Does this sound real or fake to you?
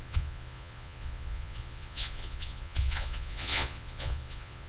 fake